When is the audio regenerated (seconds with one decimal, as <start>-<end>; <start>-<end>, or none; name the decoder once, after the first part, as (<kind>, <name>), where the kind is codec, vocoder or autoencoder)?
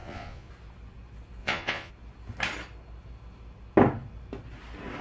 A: 0.0-0.5 (vocoder, Vocos); 1.4-1.9